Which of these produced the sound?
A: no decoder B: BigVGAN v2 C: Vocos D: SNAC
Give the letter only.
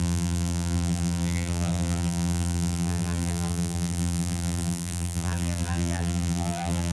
B